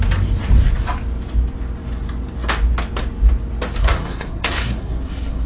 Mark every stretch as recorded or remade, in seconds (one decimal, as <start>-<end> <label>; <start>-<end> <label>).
0.0-3.8 recorded; 3.8-5.5 remade